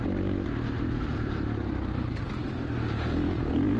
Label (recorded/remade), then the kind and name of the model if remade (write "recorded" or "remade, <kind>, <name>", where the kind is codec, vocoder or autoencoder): recorded